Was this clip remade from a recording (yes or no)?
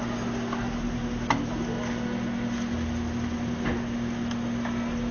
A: no